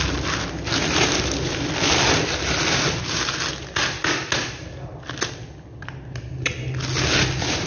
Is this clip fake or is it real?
real